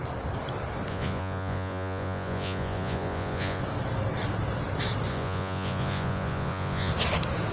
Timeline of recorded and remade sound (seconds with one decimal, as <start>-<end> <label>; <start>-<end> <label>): 0.0-0.9 recorded; 0.9-3.6 remade; 3.6-5.1 recorded; 5.1-6.9 remade; 6.9-7.5 recorded